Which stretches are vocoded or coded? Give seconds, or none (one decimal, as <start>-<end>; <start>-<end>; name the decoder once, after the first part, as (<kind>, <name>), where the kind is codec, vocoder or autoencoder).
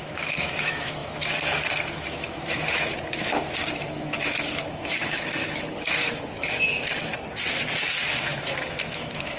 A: 0.0-7.1 (autoencoder, DAC-VAE); 8.2-9.4